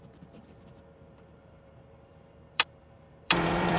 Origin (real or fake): fake